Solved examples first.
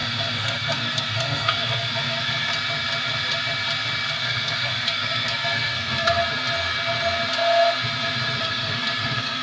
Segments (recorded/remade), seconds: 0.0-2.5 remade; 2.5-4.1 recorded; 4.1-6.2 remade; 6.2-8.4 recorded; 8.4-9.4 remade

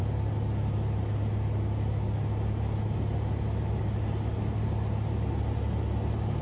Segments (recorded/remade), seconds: 0.0-6.4 recorded

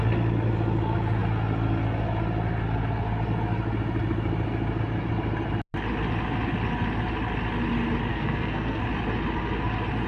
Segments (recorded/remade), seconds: 0.0-8.1 recorded; 8.1-8.8 remade; 8.8-10.1 recorded

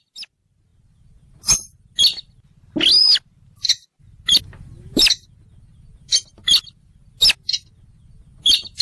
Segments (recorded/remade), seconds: 0.0-8.8 recorded

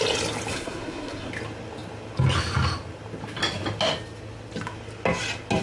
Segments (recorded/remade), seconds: 0.0-0.5 recorded; 0.5-1.3 remade; 1.3-5.6 recorded